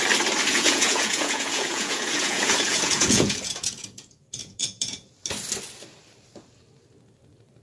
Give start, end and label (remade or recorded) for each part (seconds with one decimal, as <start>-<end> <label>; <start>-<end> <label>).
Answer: 0.0-0.5 recorded; 0.5-5.1 remade; 5.1-7.6 recorded